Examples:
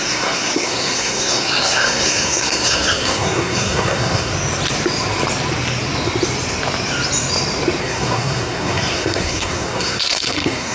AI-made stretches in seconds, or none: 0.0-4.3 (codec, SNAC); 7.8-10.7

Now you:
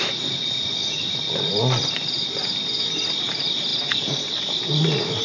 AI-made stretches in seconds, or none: none